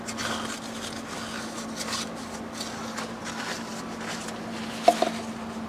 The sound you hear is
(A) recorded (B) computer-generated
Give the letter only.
A